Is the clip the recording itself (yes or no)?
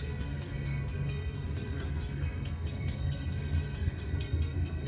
no